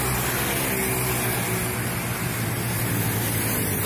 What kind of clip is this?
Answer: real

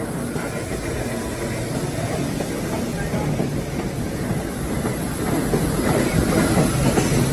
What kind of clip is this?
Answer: real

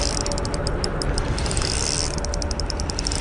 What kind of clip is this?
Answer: real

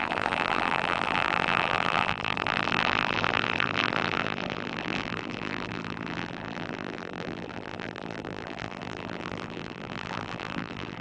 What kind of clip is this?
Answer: fake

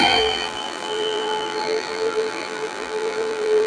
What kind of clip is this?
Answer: fake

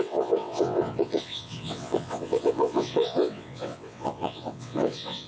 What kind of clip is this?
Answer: fake